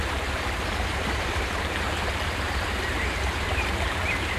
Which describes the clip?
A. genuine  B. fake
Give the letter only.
B